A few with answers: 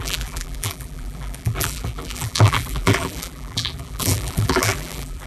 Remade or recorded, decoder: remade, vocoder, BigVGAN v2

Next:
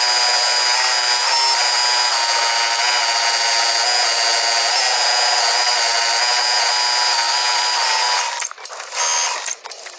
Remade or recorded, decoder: recorded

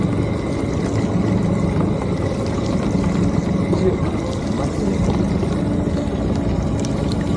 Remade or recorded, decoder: recorded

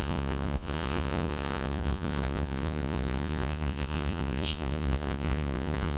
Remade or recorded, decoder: remade, vocoder, Vocos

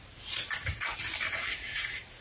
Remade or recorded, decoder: remade, vocoder, BigVGAN v2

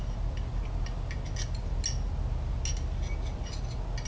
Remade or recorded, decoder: recorded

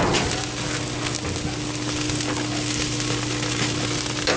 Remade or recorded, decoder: recorded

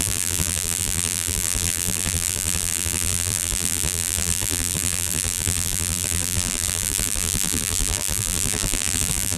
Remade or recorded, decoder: remade, vocoder, BigVGAN v2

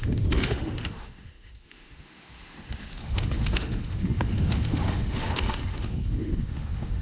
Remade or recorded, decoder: remade, autoencoder, DAC-VAE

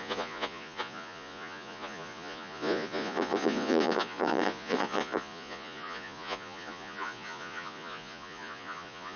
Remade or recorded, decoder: remade, vocoder, Vocos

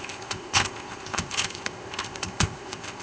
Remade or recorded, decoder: remade, codec, ZipCodec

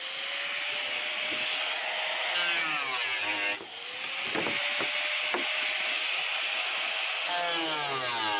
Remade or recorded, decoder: recorded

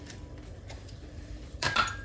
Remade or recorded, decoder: remade, vocoder, BigVGAN v2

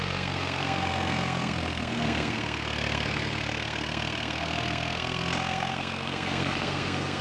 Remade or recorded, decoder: remade, codec, SNAC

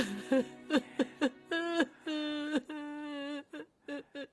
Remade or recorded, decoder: recorded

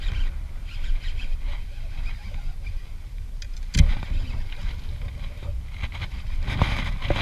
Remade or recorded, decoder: recorded